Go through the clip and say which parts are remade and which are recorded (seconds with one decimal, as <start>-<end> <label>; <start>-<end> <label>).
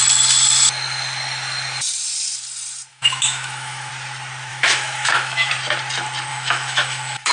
0.0-2.9 recorded; 2.9-3.9 remade; 3.9-4.5 recorded; 4.5-5.5 remade; 5.5-6.3 recorded; 6.3-7.3 remade